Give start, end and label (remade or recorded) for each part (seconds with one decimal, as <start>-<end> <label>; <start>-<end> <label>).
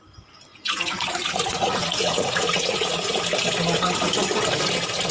0.0-0.5 recorded; 0.5-3.2 remade; 3.2-5.1 recorded